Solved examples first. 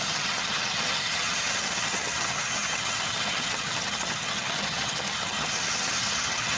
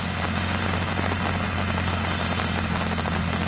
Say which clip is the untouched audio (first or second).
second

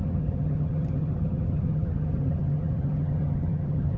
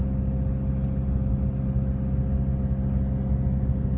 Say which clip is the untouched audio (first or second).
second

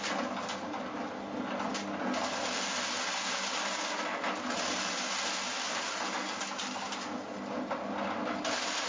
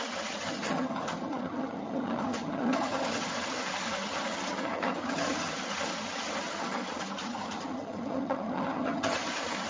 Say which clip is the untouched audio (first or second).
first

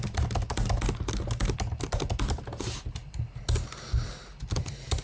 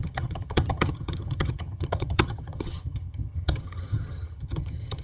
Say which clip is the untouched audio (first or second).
first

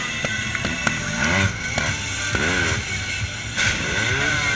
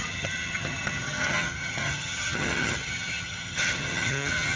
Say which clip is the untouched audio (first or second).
first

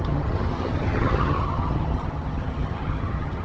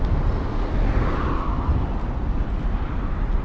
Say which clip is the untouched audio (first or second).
second